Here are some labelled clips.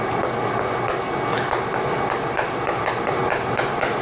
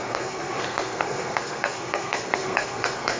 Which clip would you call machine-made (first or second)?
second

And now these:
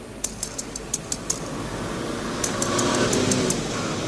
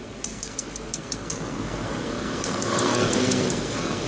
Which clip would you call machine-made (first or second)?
second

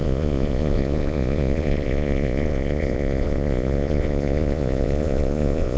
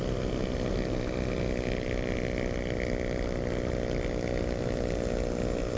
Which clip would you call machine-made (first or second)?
first